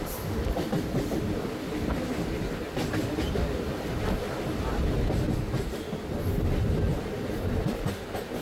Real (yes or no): yes